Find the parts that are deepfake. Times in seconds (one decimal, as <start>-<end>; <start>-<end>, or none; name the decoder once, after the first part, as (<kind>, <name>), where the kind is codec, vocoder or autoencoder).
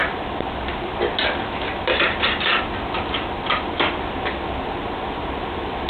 none